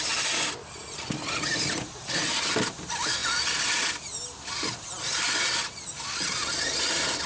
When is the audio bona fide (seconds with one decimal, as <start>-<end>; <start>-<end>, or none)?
0.0-7.3